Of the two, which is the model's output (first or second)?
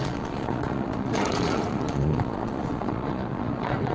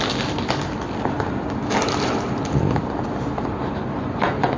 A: first